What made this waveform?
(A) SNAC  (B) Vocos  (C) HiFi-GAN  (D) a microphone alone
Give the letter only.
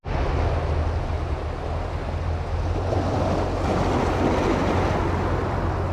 D